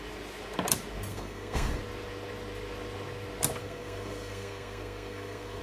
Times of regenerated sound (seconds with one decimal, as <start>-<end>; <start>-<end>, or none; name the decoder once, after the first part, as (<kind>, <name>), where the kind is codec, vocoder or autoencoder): 1.1-1.8 (codec, SNAC); 3.6-5.6